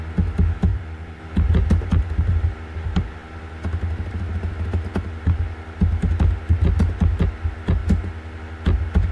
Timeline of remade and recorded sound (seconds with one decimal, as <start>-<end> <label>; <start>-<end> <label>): 0.0-0.7 recorded; 0.7-1.2 remade; 1.2-9.1 recorded